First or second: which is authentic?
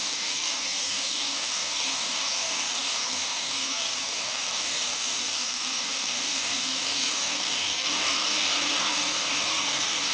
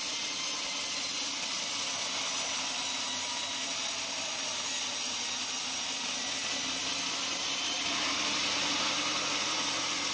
second